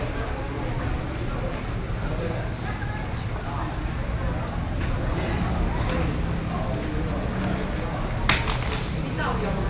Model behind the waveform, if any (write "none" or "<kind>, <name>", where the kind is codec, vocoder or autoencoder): none